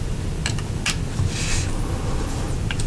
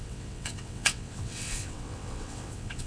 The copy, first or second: second